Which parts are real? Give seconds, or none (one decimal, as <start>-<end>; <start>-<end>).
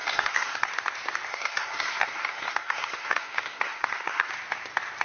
0.7-1.3; 4.3-5.0